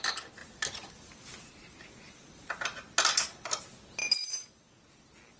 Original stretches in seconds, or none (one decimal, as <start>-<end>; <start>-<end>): 0.0-5.4